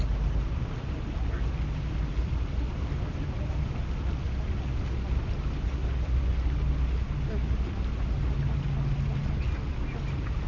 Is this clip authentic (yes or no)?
yes